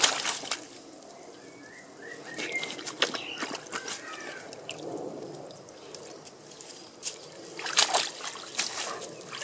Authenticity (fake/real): real